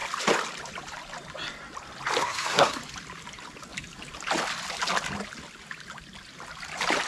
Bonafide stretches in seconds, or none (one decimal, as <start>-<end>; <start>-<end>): 0.0-2.2; 2.8-7.1